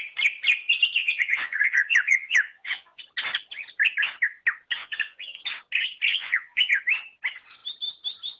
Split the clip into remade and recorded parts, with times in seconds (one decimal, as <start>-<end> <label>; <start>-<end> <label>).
0.0-1.0 recorded; 1.0-3.0 remade; 3.0-4.8 recorded; 4.8-5.4 remade; 5.4-6.1 recorded; 6.1-6.8 remade; 6.8-8.4 recorded